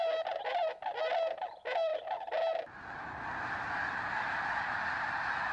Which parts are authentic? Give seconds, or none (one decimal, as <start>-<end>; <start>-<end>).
0.0-5.5